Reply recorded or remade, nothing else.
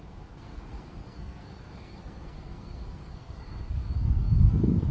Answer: remade